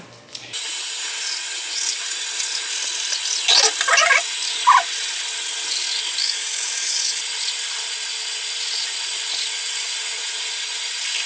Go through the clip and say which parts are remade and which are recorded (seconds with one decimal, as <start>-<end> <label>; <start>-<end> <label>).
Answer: 0.0-6.2 recorded; 6.2-7.2 remade; 7.2-11.3 recorded